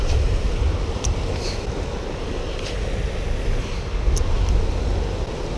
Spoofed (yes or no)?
no